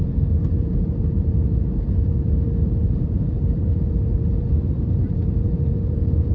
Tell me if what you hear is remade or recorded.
remade